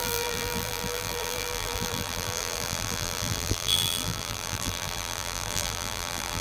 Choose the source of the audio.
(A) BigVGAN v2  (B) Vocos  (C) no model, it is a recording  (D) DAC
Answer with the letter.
A